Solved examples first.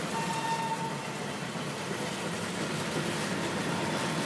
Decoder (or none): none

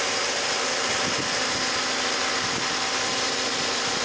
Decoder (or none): none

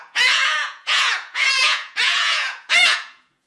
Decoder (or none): vocoder, Vocos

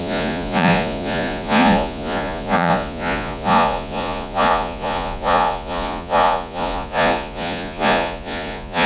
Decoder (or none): vocoder, Vocos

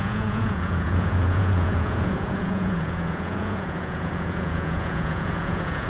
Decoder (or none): vocoder, Vocos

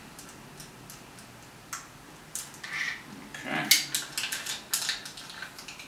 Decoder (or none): none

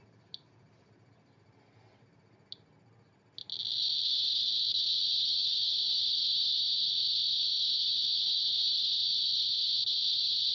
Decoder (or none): none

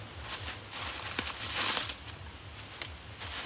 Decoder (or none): none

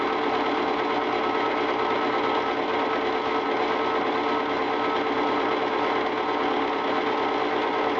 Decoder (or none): none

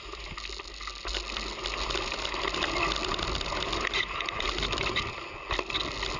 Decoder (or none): none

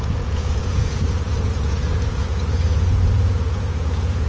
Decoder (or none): vocoder, Vocos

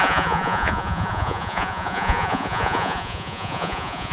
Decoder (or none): vocoder, Vocos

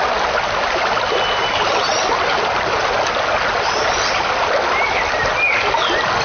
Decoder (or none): none